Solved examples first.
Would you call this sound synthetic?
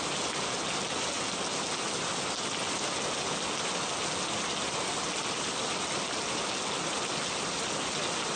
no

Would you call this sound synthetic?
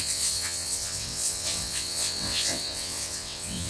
yes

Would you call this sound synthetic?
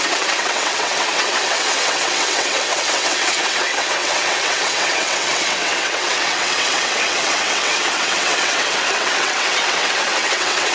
yes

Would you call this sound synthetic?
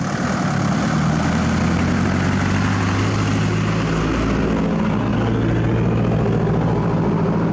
no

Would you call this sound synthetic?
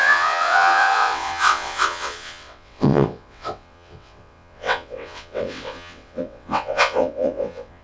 yes